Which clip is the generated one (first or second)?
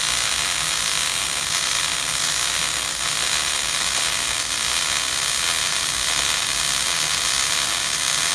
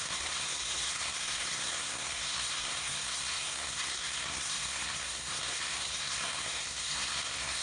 second